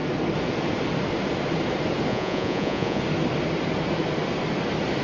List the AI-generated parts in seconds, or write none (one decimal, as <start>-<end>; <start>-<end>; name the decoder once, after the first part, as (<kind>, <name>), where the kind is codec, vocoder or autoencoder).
2.1-3.0 (vocoder, Vocos)